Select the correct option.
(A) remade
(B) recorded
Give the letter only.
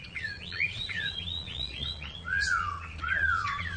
A